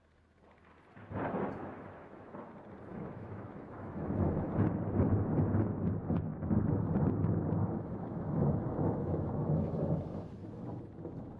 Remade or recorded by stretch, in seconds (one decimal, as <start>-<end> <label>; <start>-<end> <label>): 0.0-1.6 recorded; 1.6-2.5 remade; 2.5-2.9 recorded; 2.9-4.5 remade; 4.5-7.6 recorded; 7.6-10.3 remade; 10.3-11.4 recorded

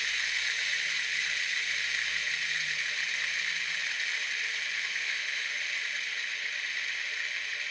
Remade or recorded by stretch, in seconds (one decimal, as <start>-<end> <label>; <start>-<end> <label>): 0.0-4.9 recorded; 4.9-5.5 remade; 5.5-7.7 recorded

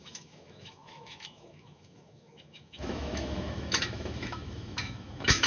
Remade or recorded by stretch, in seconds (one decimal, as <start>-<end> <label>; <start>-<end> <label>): 0.0-5.5 remade

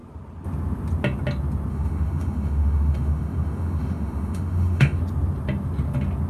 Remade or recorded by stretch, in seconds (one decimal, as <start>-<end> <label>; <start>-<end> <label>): 0.0-1.7 recorded; 1.7-5.0 remade; 5.0-6.3 recorded

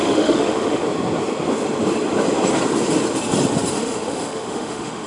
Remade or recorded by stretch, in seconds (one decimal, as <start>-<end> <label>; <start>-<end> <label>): 0.0-0.8 remade; 0.8-3.7 recorded; 3.7-5.1 remade

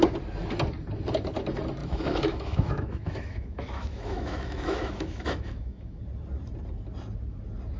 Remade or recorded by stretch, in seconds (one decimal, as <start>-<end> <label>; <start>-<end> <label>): 0.0-1.8 recorded; 1.8-6.0 remade; 6.0-7.8 recorded